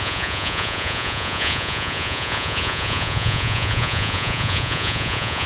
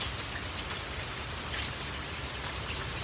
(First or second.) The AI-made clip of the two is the first